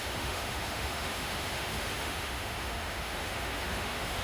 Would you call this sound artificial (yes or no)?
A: yes